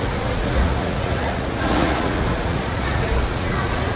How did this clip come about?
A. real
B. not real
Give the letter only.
B